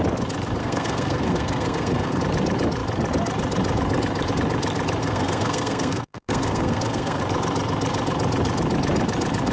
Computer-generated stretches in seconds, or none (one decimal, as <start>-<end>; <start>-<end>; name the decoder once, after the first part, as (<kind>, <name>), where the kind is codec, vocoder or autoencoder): 0.6-2.2 (codec, SNAC); 5.0-7.2